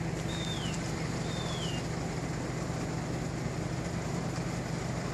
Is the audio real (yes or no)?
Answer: yes